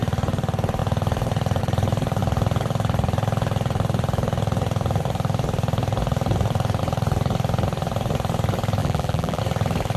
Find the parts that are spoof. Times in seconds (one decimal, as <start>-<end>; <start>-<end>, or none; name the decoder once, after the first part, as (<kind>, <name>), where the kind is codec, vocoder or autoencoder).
8.8-9.4 (vocoder, BigVGAN v2)